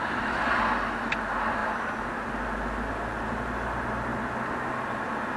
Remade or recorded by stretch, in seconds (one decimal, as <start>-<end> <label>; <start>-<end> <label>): 0.0-5.4 recorded